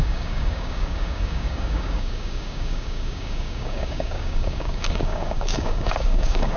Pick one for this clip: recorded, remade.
remade